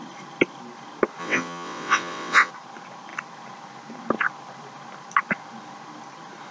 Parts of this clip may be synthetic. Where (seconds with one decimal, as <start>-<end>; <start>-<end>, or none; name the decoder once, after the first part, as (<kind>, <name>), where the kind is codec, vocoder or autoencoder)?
1.2-2.5 (vocoder, WaveNeXt)